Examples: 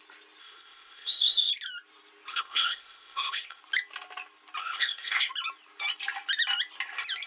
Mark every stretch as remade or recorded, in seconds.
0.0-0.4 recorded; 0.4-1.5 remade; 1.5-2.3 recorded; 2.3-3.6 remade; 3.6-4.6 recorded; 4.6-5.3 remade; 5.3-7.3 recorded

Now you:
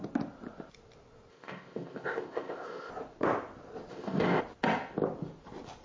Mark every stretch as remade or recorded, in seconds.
0.0-1.3 recorded; 1.3-2.9 remade; 2.9-3.9 recorded; 3.9-4.4 remade; 4.4-5.8 recorded